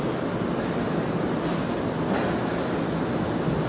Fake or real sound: real